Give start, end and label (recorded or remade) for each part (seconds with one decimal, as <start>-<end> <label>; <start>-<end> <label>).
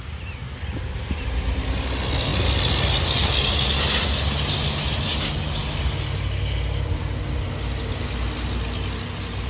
0.0-9.5 recorded